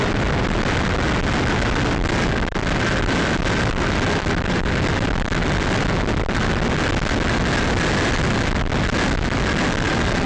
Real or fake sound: real